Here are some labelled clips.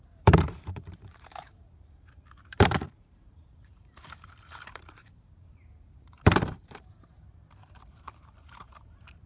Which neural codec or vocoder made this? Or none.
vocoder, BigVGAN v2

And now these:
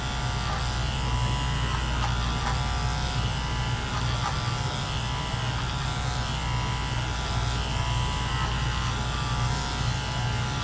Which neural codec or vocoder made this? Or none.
none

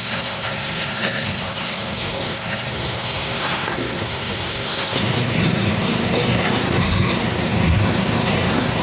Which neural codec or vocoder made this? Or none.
codec, SNAC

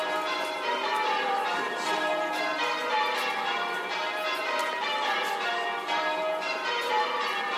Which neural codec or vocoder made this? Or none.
vocoder, BigVGAN v2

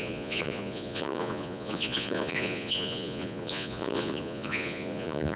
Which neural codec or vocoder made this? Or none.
vocoder, Vocos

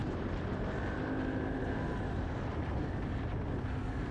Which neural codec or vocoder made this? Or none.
none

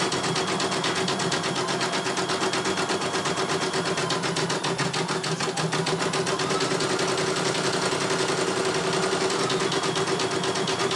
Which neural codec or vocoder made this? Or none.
none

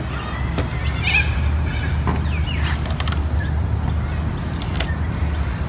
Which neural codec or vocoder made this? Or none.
none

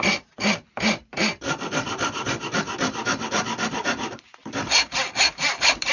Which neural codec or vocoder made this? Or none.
vocoder, BigVGAN v2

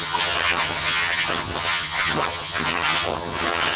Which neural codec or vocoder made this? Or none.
vocoder, HiFi-GAN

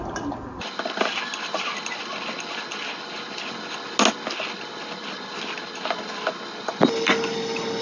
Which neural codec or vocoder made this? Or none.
none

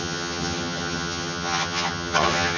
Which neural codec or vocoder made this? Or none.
vocoder, HiFi-GAN